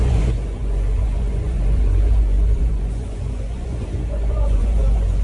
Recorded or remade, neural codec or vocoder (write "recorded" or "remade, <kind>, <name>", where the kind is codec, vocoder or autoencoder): remade, vocoder, Vocos